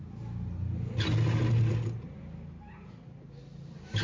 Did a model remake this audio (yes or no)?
no